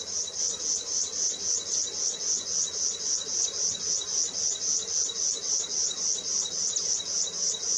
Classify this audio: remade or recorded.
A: recorded